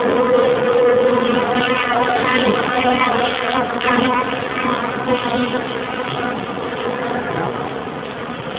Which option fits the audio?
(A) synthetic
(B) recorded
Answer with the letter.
A